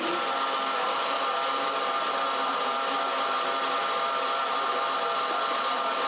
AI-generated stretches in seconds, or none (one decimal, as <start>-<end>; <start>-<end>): none